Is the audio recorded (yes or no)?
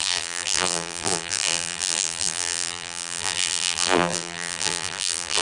no